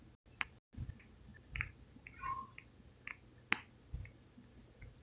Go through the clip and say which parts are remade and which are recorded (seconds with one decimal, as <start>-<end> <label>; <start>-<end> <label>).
0.0-5.0 recorded